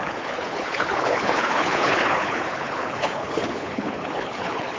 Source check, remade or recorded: remade